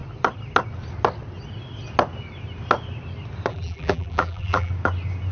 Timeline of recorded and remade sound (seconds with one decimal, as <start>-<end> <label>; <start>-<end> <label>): 0.0-3.5 recorded; 3.5-4.7 remade; 4.7-5.3 recorded